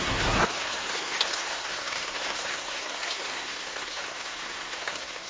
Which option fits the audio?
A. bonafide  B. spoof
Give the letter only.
B